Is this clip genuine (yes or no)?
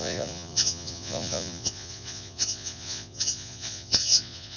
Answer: no